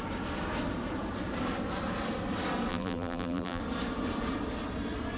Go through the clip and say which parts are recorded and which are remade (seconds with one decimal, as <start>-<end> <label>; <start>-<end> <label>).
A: 0.0-2.7 recorded; 2.7-3.6 remade; 3.6-5.2 recorded